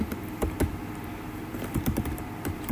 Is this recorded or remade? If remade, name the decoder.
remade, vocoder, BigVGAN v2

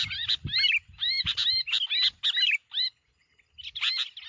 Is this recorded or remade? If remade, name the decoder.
recorded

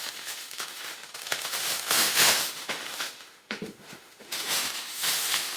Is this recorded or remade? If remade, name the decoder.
remade, autoencoder, DAC-VAE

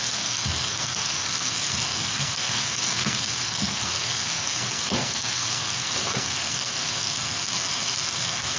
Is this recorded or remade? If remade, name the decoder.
remade, codec, SNAC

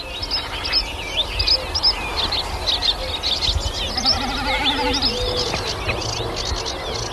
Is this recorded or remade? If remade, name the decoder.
recorded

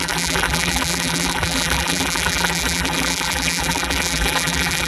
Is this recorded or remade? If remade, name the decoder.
remade, vocoder, BigVGAN v2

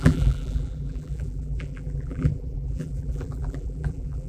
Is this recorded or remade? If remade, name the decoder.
remade, vocoder, BigVGAN v2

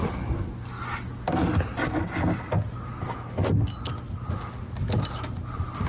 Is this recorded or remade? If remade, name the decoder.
recorded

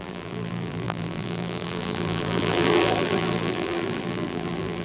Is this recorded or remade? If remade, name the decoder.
remade, vocoder, BigVGAN v2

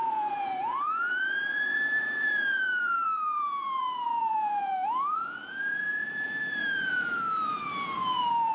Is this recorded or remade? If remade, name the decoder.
remade, vocoder, Vocos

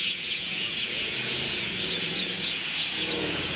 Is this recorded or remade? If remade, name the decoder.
remade, vocoder, Vocos